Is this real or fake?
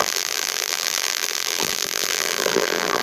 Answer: fake